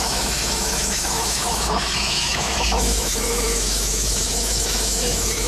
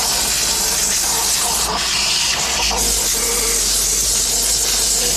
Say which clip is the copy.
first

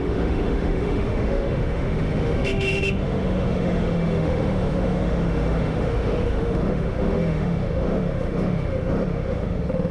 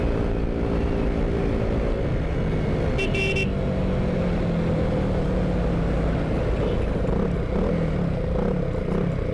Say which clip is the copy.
first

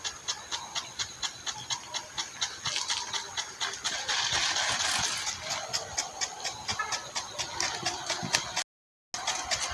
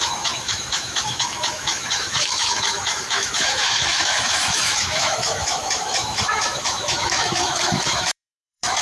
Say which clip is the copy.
second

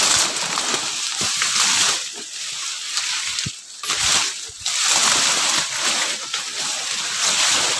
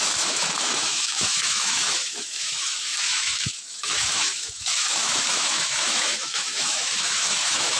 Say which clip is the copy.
second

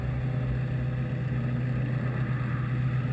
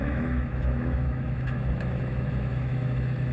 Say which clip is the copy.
second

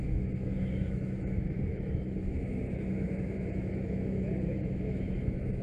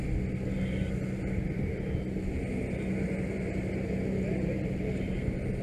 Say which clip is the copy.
first